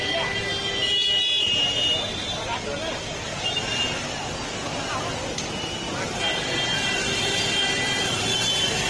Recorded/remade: recorded